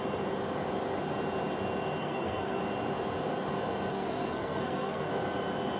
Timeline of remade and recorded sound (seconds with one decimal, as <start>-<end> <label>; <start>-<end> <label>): 0.0-2.0 recorded; 2.0-2.6 remade; 2.6-3.9 recorded; 3.9-5.1 remade; 5.1-5.8 recorded